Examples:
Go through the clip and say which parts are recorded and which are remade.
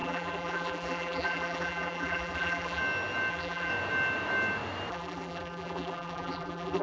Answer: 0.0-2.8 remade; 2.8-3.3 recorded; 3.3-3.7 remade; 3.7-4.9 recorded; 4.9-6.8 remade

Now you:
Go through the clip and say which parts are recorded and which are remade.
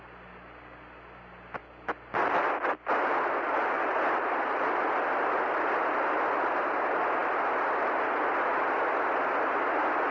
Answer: 0.0-3.9 recorded; 3.9-6.0 remade; 6.0-7.2 recorded; 7.2-9.2 remade; 9.2-10.1 recorded